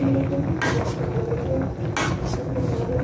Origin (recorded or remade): recorded